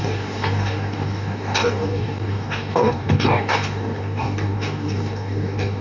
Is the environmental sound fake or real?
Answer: fake